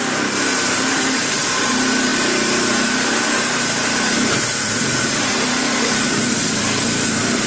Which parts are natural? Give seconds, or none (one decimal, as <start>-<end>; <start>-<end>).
none